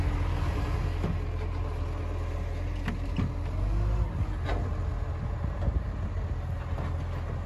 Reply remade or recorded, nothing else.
recorded